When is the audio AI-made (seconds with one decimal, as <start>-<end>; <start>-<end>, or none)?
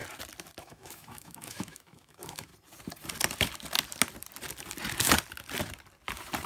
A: 0.6-2.5